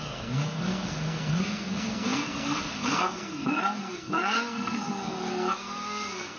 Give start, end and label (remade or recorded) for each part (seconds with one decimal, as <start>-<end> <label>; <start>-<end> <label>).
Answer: 0.0-6.4 remade

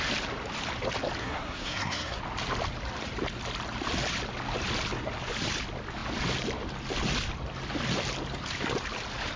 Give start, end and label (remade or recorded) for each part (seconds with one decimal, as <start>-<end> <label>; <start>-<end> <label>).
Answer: 0.0-1.2 recorded; 1.2-2.2 remade; 2.2-9.4 recorded